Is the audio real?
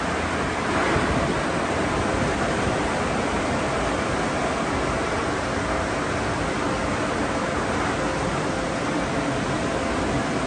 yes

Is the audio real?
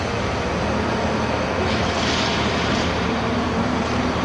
yes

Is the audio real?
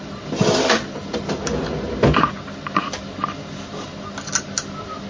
yes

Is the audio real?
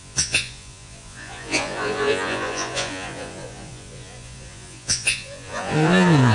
no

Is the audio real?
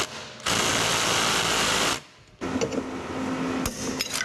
yes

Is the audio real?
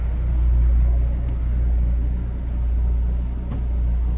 yes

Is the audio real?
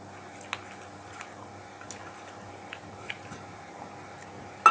yes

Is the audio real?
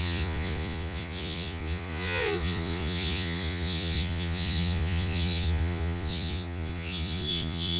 no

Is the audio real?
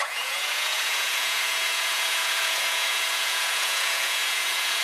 no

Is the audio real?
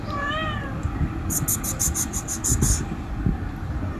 yes